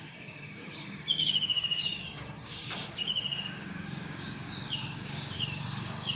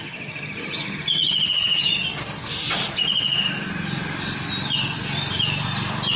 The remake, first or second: first